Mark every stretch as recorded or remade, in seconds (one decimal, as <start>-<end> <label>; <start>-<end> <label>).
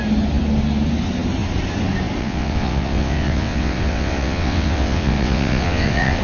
0.0-2.2 recorded; 2.2-6.2 remade